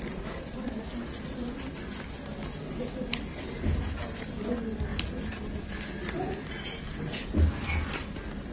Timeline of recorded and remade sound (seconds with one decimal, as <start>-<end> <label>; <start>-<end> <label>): 0.0-8.5 recorded